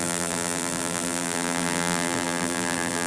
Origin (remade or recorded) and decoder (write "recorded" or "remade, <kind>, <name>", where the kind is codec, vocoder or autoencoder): remade, vocoder, BigVGAN v2